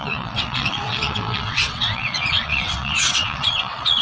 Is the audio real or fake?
fake